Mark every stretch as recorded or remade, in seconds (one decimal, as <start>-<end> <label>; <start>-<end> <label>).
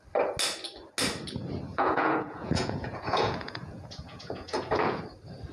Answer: 0.0-1.7 recorded; 1.7-5.0 remade; 5.0-5.5 recorded